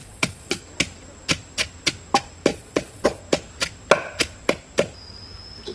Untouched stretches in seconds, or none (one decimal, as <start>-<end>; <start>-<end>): 0.6-2.5; 3.2-5.7